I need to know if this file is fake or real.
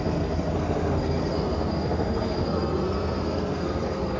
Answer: fake